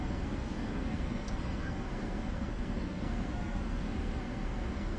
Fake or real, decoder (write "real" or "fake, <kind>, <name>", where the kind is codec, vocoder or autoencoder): fake, codec, SNAC